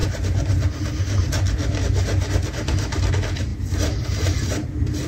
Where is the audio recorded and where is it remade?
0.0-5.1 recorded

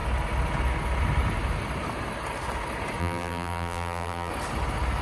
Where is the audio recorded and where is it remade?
0.0-3.0 recorded; 3.0-4.3 remade; 4.3-5.0 recorded

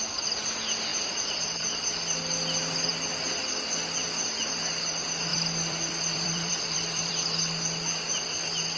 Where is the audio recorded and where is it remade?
0.0-0.9 recorded; 0.9-1.8 remade; 1.8-5.3 recorded; 5.3-7.1 remade; 7.1-8.8 recorded

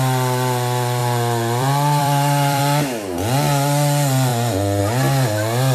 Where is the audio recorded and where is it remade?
0.0-1.0 recorded; 1.0-2.6 remade; 2.6-5.7 recorded

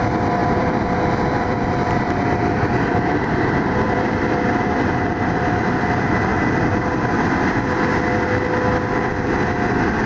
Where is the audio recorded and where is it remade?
0.0-0.4 recorded; 0.4-5.3 remade; 5.3-10.1 recorded

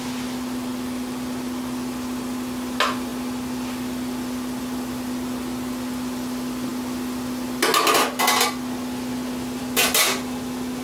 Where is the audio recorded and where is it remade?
0.0-10.8 recorded